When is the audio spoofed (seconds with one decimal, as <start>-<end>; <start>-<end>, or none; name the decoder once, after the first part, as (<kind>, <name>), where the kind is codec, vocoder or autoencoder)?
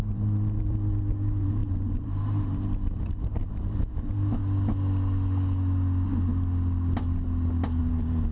0.0-4.4 (vocoder, BigVGAN v2); 7.8-8.3